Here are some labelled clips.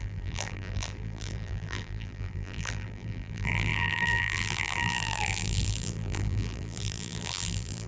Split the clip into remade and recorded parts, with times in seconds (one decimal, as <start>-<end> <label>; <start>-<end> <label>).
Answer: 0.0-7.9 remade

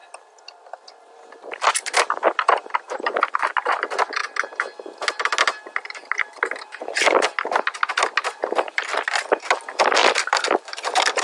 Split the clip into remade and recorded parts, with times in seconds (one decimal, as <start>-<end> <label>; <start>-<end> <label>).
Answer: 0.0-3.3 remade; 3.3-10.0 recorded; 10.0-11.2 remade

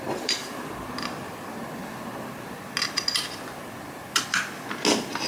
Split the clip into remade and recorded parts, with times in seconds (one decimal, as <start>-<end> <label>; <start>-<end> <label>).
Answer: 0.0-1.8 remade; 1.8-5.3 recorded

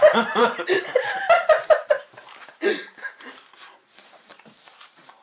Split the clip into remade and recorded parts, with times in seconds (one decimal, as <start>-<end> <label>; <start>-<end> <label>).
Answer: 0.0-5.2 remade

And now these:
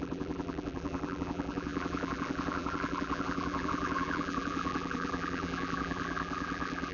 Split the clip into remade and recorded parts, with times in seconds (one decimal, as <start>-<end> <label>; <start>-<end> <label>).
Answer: 0.0-6.9 remade